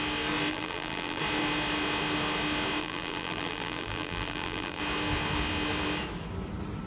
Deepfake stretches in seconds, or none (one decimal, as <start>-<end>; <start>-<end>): 0.5-1.2; 2.8-4.8